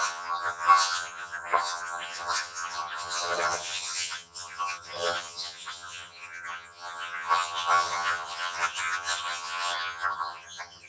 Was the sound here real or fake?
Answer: fake